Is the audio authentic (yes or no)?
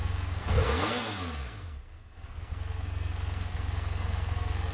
no